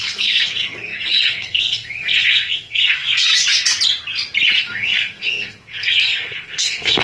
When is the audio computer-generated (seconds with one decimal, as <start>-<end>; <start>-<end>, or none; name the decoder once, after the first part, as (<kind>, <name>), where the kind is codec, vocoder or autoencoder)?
0.0-3.3 (codec, SNAC); 4.6-7.0